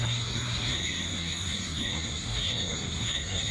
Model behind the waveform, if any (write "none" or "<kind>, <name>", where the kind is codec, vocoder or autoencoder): codec, SNAC